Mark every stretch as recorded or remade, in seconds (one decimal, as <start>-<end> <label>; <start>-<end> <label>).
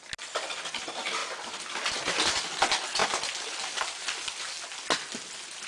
0.0-5.7 recorded